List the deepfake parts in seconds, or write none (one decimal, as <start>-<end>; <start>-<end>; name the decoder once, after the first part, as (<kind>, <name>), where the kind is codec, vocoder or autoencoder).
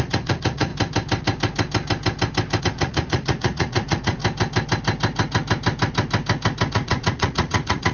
0.0-0.7 (vocoder, Vocos); 2.6-4.2; 6.7-7.9